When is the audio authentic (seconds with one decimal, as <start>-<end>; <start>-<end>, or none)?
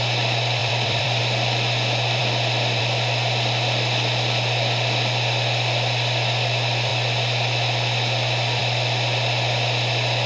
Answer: 0.0-0.6; 1.2-10.3